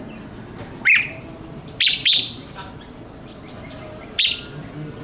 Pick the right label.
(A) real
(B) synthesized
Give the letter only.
A